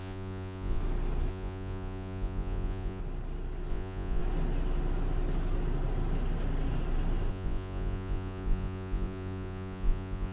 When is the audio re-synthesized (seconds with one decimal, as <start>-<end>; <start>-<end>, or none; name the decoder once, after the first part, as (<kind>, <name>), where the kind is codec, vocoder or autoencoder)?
0.0-0.8 (vocoder, Vocos); 1.3-3.0; 3.7-4.2; 7.3-10.3